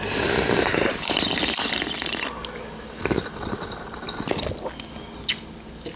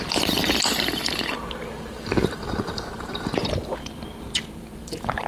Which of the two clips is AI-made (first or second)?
second